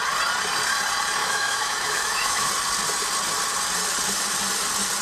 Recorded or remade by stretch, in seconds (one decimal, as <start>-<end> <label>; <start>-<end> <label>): 0.0-1.2 recorded; 1.2-2.5 remade; 2.5-5.0 recorded